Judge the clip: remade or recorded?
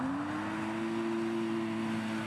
recorded